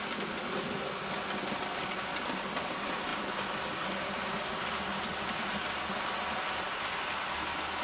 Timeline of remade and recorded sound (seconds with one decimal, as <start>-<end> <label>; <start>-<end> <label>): 0.0-7.8 recorded